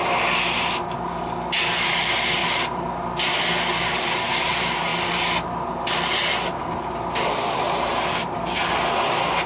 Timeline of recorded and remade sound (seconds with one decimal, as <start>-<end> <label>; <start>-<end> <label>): 0.0-9.5 recorded

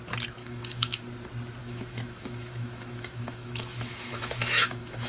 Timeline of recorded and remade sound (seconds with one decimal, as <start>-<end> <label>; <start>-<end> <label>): 0.0-0.4 recorded; 0.4-1.0 remade; 1.0-1.6 recorded; 1.6-5.1 remade

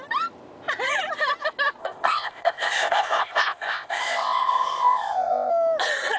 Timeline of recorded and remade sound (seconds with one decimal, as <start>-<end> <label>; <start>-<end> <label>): 0.0-1.8 recorded; 1.8-5.5 remade; 5.5-6.2 recorded